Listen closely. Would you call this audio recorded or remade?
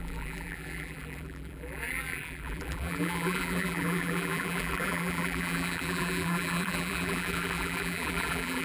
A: remade